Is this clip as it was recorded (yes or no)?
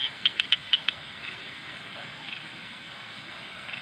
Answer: no